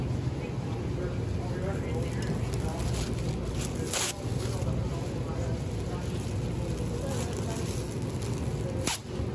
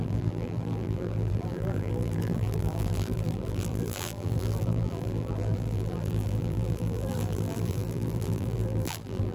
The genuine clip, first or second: first